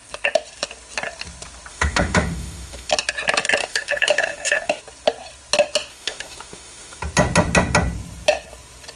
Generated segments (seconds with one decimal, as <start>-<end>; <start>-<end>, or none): 1.7-2.9; 3.6-4.8; 5.9-7.0